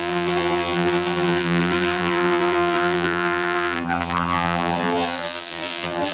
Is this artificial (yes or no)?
yes